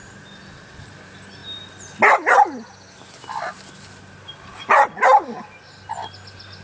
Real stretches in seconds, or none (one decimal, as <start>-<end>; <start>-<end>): 0.0-6.6